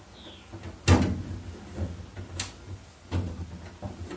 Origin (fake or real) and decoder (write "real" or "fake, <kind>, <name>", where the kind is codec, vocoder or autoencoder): real